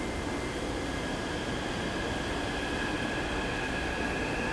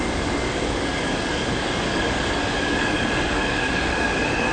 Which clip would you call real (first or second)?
first